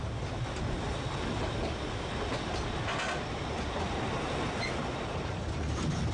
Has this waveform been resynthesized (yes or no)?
no